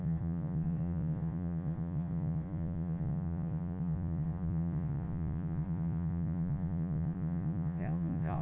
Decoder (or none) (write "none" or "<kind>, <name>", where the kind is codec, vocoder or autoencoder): vocoder, Vocos